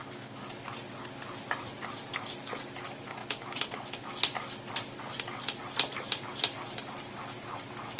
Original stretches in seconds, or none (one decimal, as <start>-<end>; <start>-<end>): 0.0-8.0